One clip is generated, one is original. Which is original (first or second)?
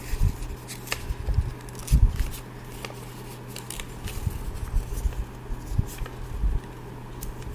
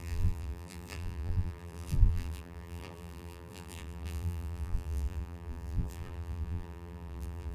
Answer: first